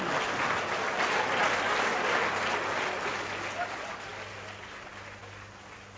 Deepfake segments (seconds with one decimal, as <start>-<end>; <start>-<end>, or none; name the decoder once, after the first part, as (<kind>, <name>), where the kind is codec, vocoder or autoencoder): none